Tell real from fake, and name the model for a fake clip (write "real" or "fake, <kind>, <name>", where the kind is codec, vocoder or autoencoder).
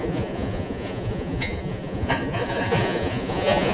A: fake, vocoder, Vocos